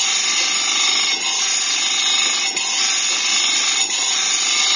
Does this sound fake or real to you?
real